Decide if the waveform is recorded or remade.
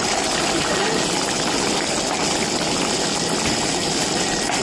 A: recorded